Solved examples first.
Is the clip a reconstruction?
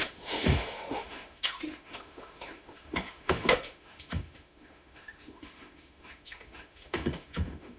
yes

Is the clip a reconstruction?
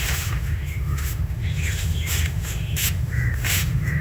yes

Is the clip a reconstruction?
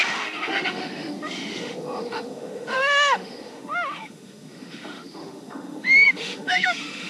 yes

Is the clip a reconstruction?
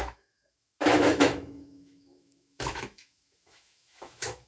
yes